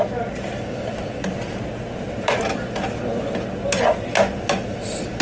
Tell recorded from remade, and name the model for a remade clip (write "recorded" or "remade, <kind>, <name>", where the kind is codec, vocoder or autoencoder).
recorded